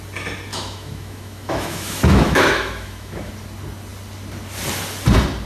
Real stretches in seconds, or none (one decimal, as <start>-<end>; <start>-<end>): 0.0-0.5; 3.3-5.5